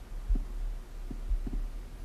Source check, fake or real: real